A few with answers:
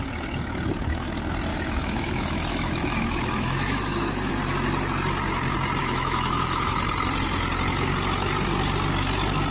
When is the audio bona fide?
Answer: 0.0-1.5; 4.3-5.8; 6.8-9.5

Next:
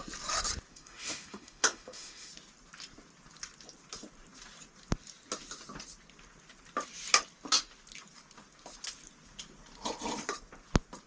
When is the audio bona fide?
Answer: 0.0-0.7; 2.3-11.1

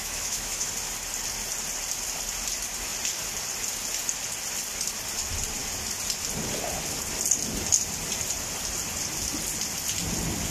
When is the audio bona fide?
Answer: 0.7-10.5